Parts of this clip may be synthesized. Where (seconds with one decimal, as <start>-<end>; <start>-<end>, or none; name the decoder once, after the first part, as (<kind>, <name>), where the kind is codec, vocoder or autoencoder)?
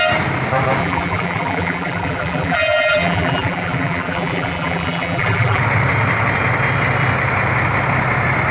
0.8-5.6 (vocoder, BigVGAN v2)